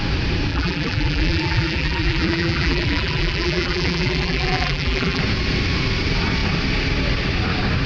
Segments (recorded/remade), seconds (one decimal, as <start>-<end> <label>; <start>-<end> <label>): 0.0-0.5 recorded; 0.5-5.2 remade; 5.2-7.9 recorded